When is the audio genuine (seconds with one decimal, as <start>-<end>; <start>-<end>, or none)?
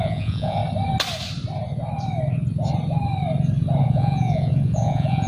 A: 0.6-3.8